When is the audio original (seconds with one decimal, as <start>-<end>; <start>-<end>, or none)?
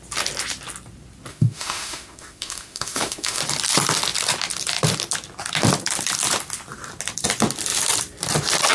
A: 0.0-1.3; 3.4-8.7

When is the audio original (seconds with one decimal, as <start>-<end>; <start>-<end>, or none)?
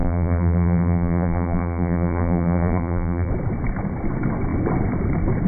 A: 3.3-5.5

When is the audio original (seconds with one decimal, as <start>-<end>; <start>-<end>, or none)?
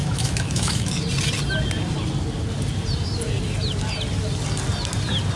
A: 0.9-5.4